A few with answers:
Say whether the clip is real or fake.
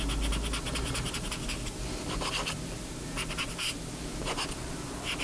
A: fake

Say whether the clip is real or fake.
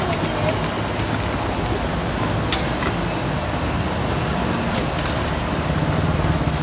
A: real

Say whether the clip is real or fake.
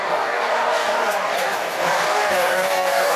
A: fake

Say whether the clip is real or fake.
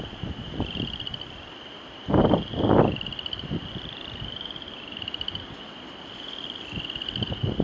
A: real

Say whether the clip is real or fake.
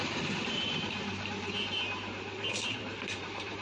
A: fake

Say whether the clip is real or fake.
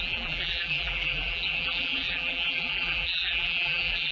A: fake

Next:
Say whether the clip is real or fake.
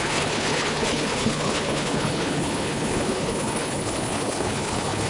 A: fake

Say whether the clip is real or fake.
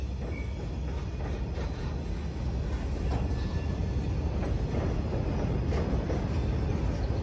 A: real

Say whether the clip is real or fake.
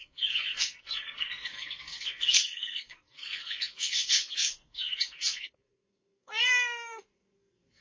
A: fake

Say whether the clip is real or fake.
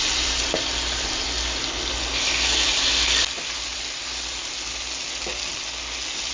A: real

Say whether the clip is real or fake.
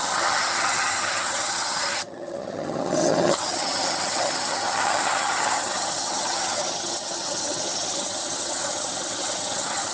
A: fake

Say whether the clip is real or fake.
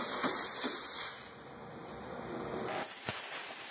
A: fake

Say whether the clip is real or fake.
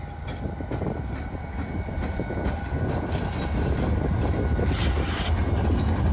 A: real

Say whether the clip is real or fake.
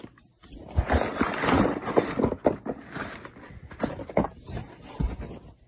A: fake